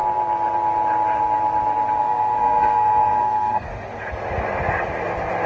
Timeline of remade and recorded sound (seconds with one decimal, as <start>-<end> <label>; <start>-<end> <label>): 0.0-2.0 recorded; 2.0-3.7 remade; 3.7-5.5 recorded